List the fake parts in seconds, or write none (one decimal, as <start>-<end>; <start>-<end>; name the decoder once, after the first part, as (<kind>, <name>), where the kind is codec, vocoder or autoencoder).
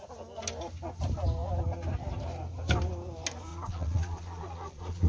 3.5-5.1 (vocoder, Vocos)